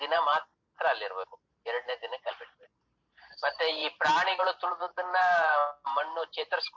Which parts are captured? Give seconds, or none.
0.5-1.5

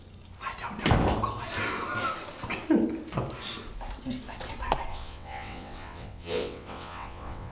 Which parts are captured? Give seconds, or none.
0.0-4.9

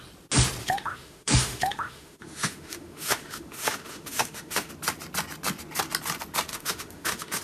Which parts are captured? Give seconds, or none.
0.0-0.6; 4.7-6.5

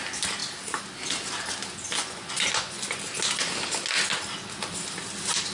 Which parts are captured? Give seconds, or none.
0.0-2.0; 3.0-5.5